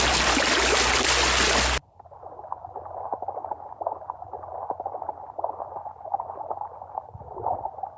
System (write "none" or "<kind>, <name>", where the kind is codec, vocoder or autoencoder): none